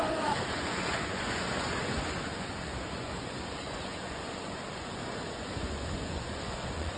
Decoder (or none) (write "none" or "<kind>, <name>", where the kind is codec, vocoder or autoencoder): vocoder, Vocos